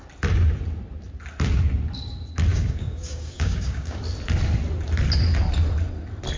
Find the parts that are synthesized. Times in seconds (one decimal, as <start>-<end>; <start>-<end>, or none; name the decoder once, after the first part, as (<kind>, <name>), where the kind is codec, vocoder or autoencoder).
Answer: 2.5-4.0 (codec, DAC)